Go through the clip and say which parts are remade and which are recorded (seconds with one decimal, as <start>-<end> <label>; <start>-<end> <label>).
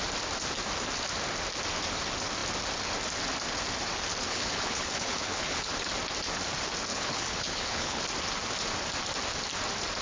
0.0-4.3 recorded; 4.3-5.7 remade; 5.7-6.9 recorded; 6.9-8.0 remade; 8.0-10.0 recorded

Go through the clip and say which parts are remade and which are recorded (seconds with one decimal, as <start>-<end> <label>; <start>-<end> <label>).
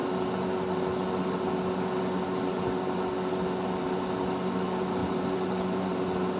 0.0-5.0 recorded; 5.0-5.9 remade; 5.9-6.4 recorded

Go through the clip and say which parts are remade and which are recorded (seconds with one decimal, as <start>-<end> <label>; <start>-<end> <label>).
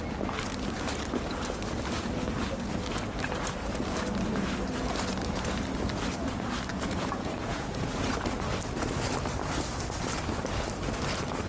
0.0-6.7 recorded; 6.7-8.1 remade; 8.1-11.5 recorded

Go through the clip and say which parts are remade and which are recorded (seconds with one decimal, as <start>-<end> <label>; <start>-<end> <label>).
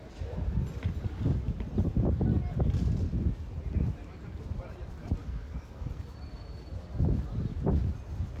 0.0-5.2 recorded; 5.2-6.0 remade; 6.0-8.4 recorded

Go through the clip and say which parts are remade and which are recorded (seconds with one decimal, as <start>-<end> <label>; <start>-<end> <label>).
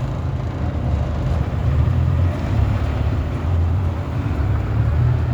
0.0-1.6 recorded; 1.6-4.8 remade; 4.8-5.3 recorded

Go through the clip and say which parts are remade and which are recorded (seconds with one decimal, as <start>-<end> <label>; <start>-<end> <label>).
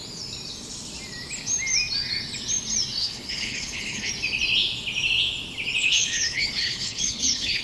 0.0-3.0 recorded; 3.0-4.1 remade; 4.1-5.8 recorded; 5.8-7.6 remade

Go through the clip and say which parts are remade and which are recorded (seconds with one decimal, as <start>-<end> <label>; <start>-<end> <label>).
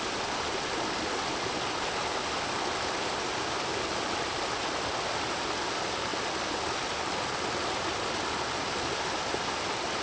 0.0-10.0 recorded